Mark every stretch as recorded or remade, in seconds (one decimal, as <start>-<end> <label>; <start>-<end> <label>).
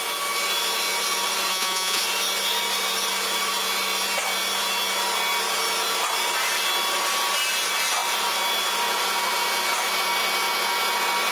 0.0-1.5 recorded; 1.5-2.0 remade; 2.0-11.3 recorded